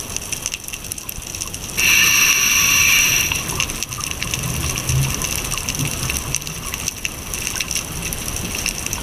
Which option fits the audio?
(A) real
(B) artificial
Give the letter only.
A